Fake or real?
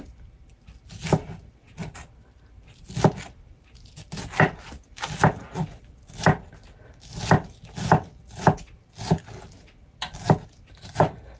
real